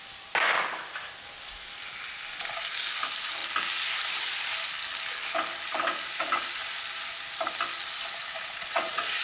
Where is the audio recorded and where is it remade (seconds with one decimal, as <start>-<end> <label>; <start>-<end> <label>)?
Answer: 0.0-8.2 recorded; 8.2-9.2 remade